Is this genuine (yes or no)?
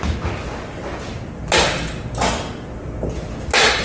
yes